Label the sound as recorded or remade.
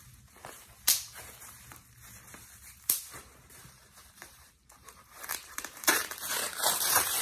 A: remade